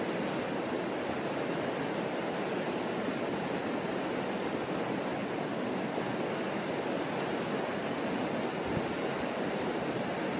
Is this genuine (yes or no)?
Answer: yes